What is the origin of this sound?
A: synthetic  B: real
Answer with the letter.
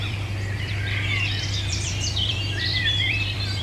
A